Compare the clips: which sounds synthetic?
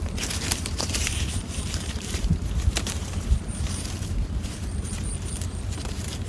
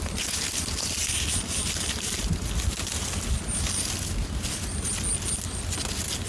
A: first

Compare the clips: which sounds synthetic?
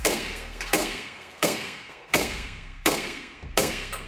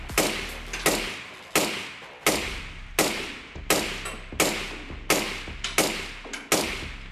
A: first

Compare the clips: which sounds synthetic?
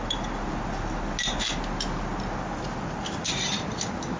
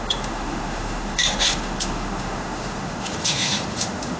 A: second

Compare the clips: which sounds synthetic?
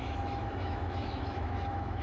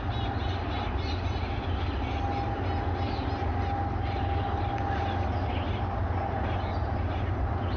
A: first